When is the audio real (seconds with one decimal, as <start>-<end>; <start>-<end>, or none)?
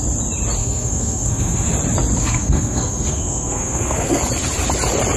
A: 0.0-0.6; 1.7-2.2; 4.2-5.2